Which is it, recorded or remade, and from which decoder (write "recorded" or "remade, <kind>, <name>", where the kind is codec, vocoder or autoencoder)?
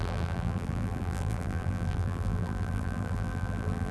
remade, vocoder, BigVGAN v2